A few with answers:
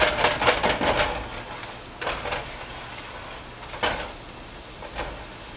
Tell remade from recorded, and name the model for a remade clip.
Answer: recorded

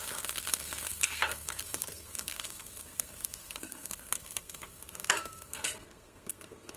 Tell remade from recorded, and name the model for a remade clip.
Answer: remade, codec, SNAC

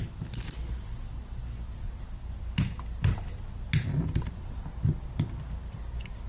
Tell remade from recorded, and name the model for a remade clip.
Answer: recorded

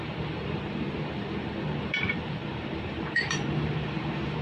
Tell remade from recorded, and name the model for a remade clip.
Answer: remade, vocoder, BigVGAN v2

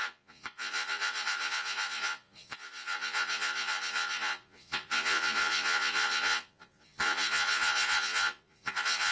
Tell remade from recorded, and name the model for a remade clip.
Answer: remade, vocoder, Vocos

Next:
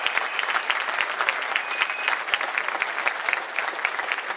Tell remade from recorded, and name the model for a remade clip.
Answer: recorded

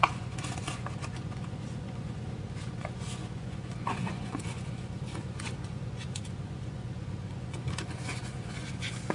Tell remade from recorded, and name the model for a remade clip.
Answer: remade, vocoder, Vocos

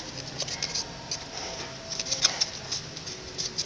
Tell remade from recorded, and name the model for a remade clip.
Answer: recorded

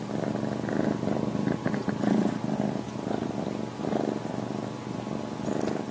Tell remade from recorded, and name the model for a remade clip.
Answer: recorded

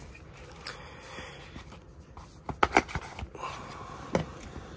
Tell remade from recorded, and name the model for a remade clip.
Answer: recorded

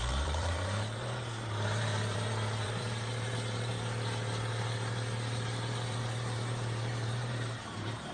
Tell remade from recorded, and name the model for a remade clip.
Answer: remade, vocoder, BigVGAN v2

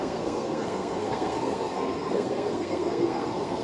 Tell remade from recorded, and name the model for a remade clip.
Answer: remade, codec, SNAC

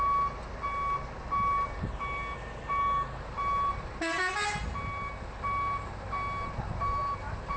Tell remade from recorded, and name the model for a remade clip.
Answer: recorded